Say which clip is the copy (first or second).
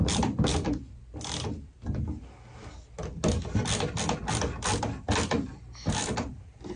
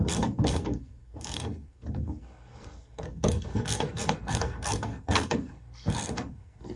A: second